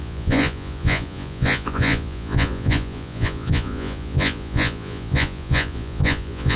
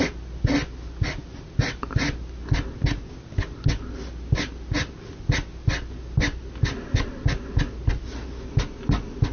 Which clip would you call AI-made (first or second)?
first